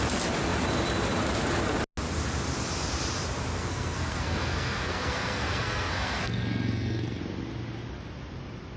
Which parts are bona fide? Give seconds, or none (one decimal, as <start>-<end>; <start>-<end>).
0.0-3.6; 7.2-8.8